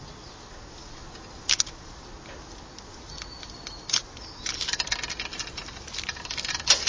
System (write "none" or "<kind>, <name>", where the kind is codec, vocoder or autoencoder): none